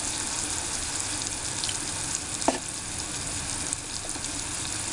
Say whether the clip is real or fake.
real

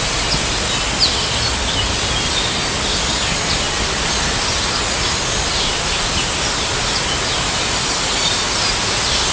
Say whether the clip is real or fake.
real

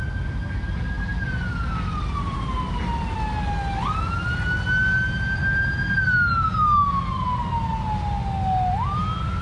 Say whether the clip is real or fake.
real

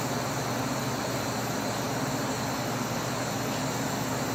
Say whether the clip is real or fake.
real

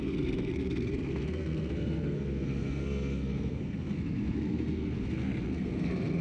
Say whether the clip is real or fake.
fake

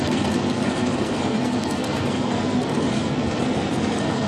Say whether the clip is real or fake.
fake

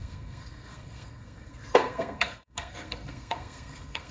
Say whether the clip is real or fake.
fake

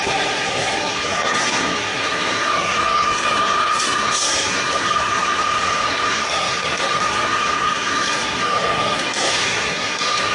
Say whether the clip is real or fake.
fake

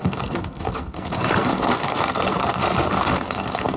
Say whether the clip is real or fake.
fake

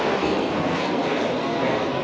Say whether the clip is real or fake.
fake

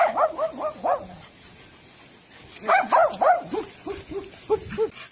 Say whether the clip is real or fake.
real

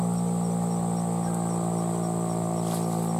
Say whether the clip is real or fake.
real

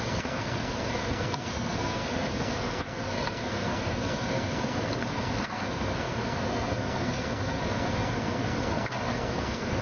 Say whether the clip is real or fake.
fake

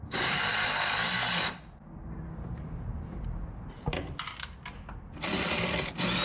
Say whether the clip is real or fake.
real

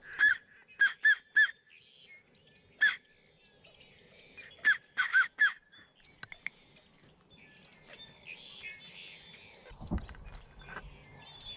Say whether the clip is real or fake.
real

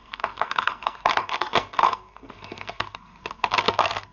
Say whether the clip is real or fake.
fake